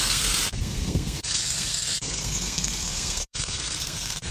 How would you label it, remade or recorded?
remade